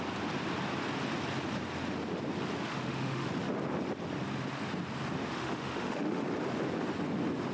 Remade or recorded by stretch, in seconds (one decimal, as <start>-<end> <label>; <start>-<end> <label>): 0.0-2.7 recorded; 2.7-3.3 remade; 3.3-5.2 recorded; 5.2-6.2 remade; 6.2-7.5 recorded